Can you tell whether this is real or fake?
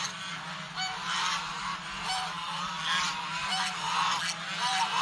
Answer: real